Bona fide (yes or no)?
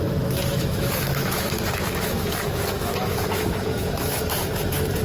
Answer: no